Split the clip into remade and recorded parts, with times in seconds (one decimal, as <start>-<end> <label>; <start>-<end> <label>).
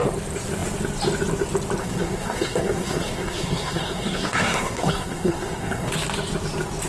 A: 0.0-1.8 recorded; 1.8-5.9 remade; 5.9-6.9 recorded